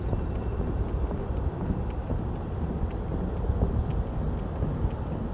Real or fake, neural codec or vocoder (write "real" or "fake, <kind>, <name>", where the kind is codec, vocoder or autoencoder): real